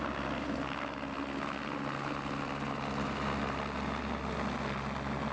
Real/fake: real